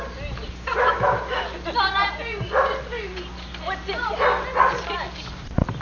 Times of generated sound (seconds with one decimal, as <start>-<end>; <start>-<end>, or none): 0.7-1.4